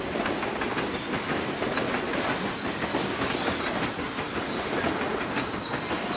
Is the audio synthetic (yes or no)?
no